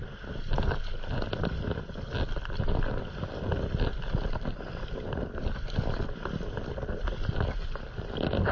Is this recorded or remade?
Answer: recorded